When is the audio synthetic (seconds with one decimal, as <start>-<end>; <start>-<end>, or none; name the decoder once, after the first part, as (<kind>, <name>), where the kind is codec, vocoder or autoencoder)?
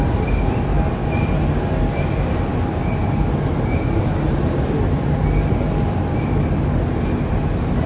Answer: none